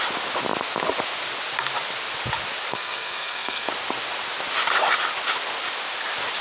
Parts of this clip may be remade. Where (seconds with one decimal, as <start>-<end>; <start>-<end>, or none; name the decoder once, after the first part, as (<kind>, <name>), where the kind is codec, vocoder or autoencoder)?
2.7-3.7 (codec, SNAC)